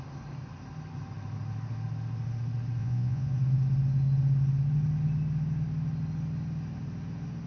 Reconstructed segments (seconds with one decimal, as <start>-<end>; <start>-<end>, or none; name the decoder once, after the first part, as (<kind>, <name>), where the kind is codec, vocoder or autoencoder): 2.8-3.3 (vocoder, Vocos)